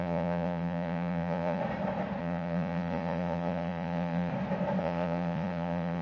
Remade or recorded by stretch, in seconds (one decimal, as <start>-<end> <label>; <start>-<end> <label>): 0.0-1.6 remade; 1.6-2.2 recorded; 2.2-4.3 remade; 4.3-4.8 recorded; 4.8-6.0 remade